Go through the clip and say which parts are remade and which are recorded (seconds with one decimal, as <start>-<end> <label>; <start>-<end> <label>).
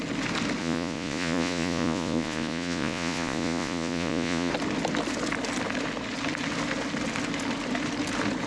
0.0-0.6 recorded; 0.6-4.5 remade; 4.5-8.5 recorded